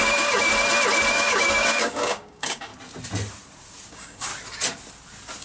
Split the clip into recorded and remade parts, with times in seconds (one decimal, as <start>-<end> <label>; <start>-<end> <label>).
0.0-0.5 remade; 0.5-1.1 recorded; 1.1-2.7 remade; 2.7-3.9 recorded; 3.9-4.3 remade; 4.3-5.4 recorded